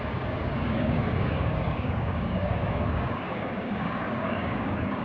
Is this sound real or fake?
fake